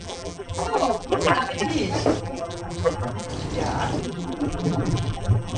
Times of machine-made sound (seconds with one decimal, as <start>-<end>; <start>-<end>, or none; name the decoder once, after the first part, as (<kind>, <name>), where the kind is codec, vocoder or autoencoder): 0.0-1.7 (vocoder, BigVGAN v2); 2.2-3.3; 4.0-5.6

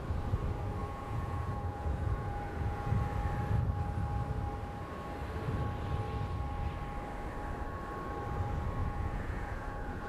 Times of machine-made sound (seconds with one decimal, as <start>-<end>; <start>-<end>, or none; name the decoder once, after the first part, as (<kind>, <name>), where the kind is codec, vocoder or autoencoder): 0.8-2.9 (vocoder, Vocos); 8.8-10.1